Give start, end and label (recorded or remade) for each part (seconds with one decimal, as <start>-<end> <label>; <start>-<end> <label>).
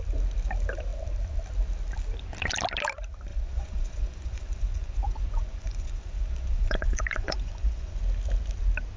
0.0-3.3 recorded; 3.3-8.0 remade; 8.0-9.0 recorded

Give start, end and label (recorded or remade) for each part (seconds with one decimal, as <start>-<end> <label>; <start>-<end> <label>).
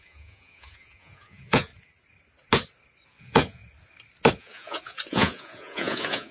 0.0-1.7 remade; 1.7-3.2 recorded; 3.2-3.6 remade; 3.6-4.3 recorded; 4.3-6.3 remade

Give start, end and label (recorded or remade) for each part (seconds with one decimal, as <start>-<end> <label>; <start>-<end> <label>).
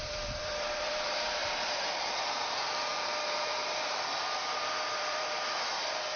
0.0-6.2 remade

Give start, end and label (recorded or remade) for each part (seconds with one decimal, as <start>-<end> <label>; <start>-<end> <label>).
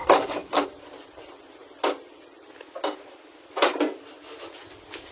0.0-0.6 remade; 0.6-5.1 recorded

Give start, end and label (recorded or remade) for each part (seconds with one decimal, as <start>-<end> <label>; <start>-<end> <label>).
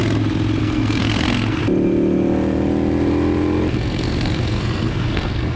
0.0-0.6 recorded; 0.6-1.6 remade; 1.6-3.7 recorded; 3.7-5.6 remade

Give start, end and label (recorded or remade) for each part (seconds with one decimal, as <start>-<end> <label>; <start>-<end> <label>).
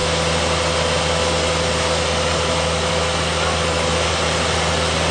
0.0-5.1 recorded